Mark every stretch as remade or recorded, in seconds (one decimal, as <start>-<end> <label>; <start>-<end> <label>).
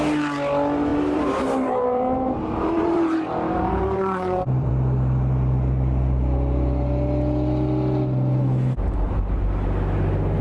0.0-0.9 recorded; 0.9-4.7 remade; 4.7-10.4 recorded